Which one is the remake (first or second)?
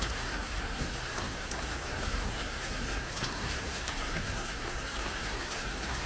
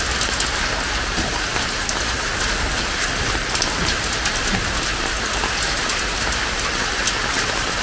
first